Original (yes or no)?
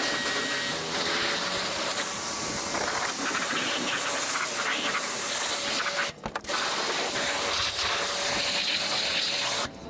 yes